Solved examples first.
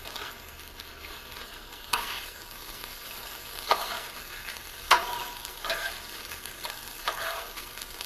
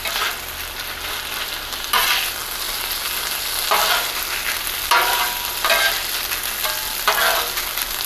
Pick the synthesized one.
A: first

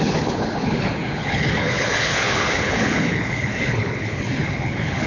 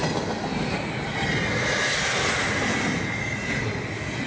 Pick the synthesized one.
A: first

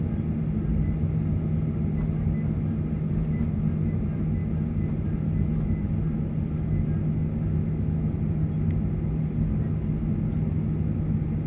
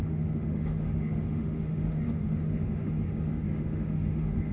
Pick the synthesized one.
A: second